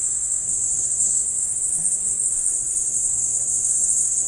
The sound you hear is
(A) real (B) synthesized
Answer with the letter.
B